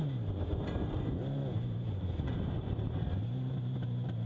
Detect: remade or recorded remade